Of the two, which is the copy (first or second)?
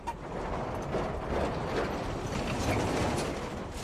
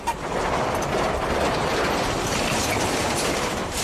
second